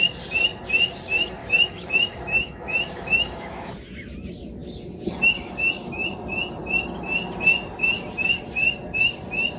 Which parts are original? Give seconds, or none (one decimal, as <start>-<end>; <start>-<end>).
0.0-1.4; 3.7-9.6